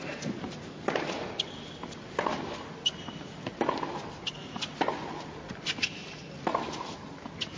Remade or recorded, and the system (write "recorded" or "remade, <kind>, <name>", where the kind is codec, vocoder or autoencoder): recorded